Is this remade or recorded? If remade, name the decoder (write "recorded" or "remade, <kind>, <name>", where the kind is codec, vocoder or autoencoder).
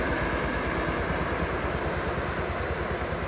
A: recorded